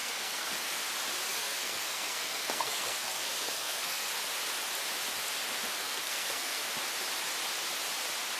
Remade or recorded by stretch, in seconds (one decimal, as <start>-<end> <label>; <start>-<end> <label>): 0.0-0.8 remade; 0.8-1.3 recorded; 1.3-4.1 remade; 4.1-5.8 recorded; 5.8-6.7 remade; 6.7-8.4 recorded